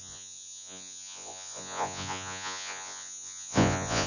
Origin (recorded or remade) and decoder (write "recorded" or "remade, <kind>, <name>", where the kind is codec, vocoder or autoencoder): remade, vocoder, Vocos